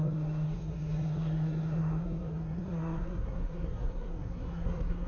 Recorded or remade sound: remade